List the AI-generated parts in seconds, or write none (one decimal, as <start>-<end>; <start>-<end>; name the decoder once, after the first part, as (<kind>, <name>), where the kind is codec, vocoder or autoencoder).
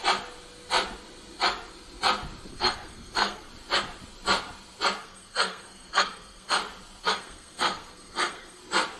2.5-3.5 (codec, SNAC); 5.0-6.6; 7.0-8.6